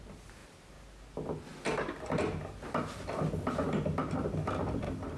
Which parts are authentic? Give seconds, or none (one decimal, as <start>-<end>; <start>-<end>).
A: 0.0-5.2